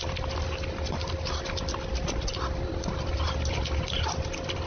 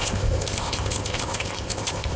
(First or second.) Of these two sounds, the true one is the first